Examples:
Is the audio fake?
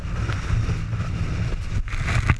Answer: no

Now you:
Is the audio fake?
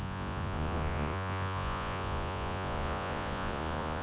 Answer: yes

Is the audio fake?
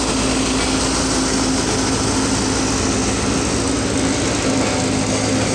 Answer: no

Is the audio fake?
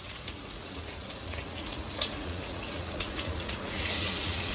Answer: yes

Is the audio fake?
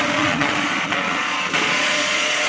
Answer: yes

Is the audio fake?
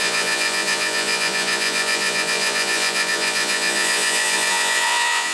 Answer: yes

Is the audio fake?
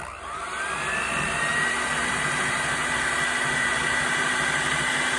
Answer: no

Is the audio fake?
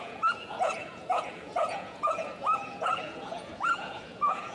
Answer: yes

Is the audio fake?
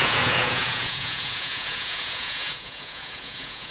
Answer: yes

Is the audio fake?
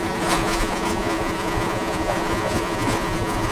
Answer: yes